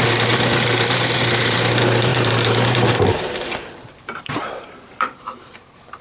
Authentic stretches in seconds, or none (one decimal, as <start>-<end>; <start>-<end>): none